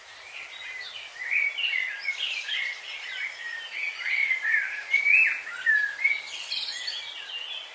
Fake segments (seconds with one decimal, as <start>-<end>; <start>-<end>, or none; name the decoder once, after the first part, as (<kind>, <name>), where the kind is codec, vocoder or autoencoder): none

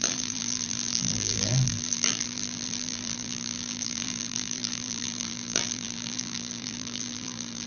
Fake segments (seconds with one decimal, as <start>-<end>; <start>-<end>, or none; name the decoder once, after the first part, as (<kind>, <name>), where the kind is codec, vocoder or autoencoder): 0.0-7.7 (vocoder, BigVGAN v2)

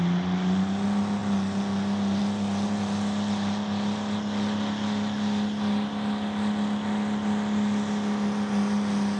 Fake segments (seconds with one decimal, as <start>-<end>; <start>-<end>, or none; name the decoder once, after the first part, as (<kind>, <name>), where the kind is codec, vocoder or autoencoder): none

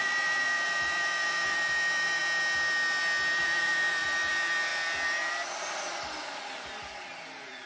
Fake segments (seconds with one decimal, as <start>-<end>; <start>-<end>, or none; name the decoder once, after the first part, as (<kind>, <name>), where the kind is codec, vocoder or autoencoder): 0.0-2.2 (vocoder, BigVGAN v2); 3.4-7.7

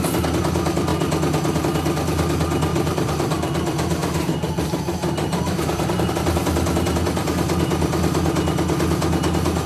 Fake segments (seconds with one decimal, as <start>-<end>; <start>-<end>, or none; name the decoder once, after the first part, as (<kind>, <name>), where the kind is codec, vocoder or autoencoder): 2.7-6.1 (vocoder, BigVGAN v2)